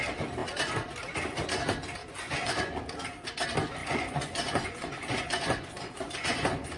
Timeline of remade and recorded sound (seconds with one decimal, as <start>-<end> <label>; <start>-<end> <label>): 0.0-2.0 recorded; 2.0-2.8 remade; 2.8-3.8 recorded; 3.8-6.8 remade